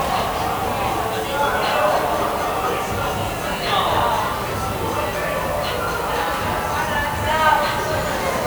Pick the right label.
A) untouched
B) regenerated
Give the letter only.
A